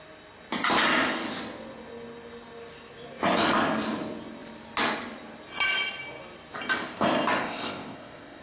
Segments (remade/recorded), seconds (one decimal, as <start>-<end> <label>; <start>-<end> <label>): 0.0-7.4 recorded; 7.4-8.4 remade